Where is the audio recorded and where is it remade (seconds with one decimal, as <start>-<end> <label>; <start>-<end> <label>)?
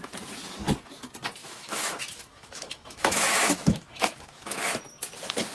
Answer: 0.0-1.4 recorded; 1.4-4.7 remade; 4.7-5.5 recorded